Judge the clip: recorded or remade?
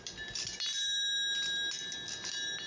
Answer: recorded